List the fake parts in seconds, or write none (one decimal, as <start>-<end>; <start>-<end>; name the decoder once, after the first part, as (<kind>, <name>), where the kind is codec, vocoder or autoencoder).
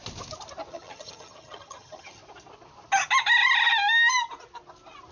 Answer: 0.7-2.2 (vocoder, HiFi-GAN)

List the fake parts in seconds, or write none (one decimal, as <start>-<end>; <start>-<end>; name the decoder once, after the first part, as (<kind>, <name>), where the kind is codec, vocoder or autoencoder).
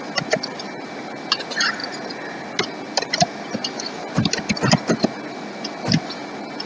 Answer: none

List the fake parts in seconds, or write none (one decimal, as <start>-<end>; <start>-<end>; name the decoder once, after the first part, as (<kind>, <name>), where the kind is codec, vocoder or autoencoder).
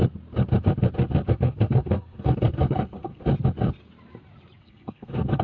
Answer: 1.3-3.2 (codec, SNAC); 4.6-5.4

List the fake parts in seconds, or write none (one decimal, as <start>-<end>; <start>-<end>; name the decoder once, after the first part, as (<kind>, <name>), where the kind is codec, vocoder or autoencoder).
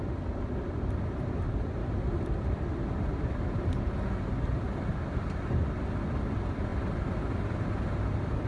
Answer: 1.8-3.7 (vocoder, BigVGAN v2); 6.7-7.7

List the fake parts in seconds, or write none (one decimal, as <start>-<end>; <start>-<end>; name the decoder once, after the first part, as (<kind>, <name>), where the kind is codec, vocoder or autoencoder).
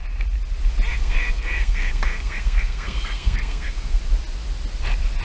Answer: 0.9-4.0 (codec, SNAC)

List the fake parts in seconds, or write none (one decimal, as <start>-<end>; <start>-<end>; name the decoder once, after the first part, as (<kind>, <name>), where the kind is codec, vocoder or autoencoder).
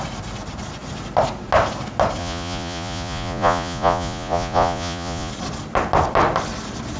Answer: 2.2-5.3 (vocoder, Vocos)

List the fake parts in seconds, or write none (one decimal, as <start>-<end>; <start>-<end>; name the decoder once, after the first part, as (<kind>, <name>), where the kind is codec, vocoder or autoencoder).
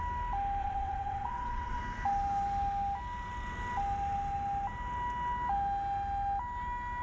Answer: 0.6-1.8 (vocoder, WaveNeXt)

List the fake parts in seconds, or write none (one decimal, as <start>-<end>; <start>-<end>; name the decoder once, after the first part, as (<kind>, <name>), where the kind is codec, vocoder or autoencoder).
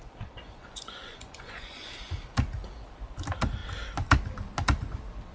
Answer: 0.6-1.9 (vocoder, Vocos)